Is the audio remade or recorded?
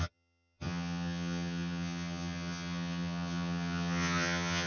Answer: remade